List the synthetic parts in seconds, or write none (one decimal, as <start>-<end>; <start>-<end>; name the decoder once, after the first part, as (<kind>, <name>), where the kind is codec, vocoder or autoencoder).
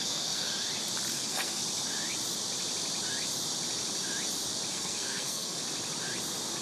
0.0-0.5 (codec, SNAC); 1.1-1.6; 4.7-5.6